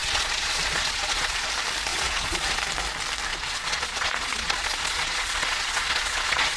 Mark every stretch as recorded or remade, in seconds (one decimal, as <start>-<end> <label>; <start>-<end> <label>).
0.0-1.5 remade; 1.5-1.9 recorded; 1.9-2.6 remade; 2.6-3.3 recorded; 3.3-6.6 remade